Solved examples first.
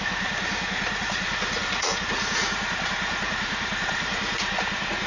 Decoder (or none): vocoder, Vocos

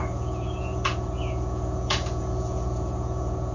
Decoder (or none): vocoder, Vocos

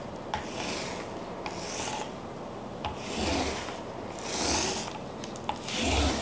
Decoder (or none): none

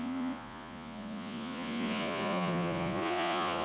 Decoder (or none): vocoder, Vocos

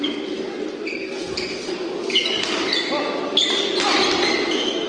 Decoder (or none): none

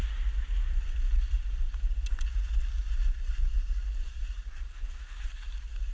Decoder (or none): none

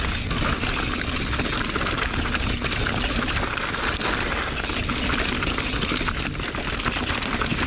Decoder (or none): none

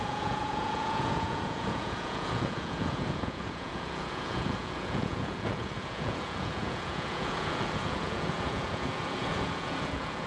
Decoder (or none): vocoder, Vocos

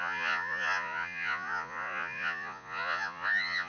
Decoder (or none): vocoder, Vocos